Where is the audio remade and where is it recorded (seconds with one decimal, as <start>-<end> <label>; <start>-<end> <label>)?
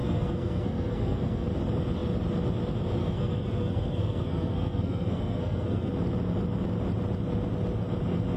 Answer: 0.0-1.5 remade; 1.5-3.0 recorded; 3.0-5.9 remade; 5.9-8.4 recorded